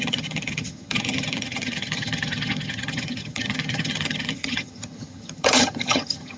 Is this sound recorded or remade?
remade